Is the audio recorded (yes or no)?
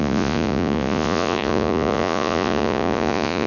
no